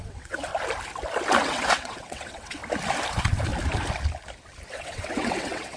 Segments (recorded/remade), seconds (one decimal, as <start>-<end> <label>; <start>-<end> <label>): 0.0-0.5 remade; 0.5-1.4 recorded; 1.4-2.6 remade; 2.6-3.1 recorded; 3.1-3.5 remade; 3.5-4.7 recorded; 4.7-5.8 remade